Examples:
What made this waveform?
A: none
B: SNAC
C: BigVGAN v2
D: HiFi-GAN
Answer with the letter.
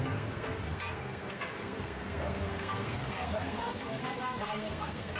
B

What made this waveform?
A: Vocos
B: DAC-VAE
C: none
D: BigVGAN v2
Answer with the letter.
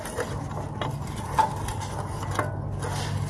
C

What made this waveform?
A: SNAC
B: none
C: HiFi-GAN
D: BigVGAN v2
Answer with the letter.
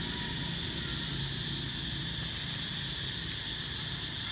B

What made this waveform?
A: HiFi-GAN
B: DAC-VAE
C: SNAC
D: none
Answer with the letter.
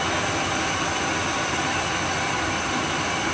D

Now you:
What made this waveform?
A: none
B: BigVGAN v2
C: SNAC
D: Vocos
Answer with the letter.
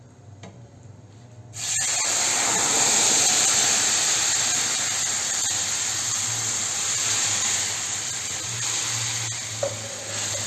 B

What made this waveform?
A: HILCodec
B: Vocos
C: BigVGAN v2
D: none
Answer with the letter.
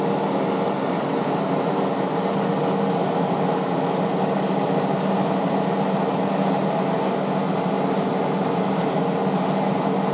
D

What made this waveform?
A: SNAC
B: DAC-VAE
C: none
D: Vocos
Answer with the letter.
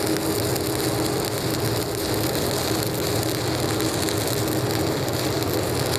C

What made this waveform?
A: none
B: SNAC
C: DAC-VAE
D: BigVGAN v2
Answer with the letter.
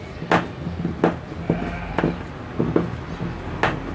A